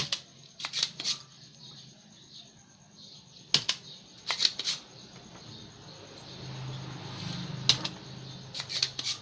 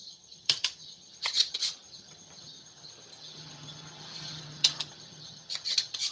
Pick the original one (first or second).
first